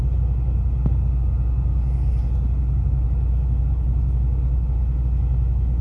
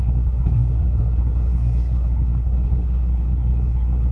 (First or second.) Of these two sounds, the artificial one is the second